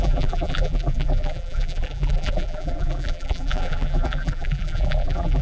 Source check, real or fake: fake